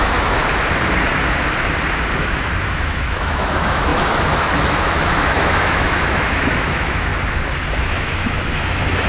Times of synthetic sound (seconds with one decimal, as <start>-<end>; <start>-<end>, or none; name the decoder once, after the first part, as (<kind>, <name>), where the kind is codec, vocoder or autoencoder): 0.0-0.4 (autoencoder, DAC-VAE); 2.2-7.1; 7.8-9.1